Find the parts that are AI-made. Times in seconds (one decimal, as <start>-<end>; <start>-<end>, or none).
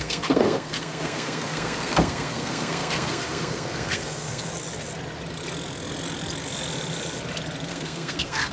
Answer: 0.0-4.5; 7.7-8.5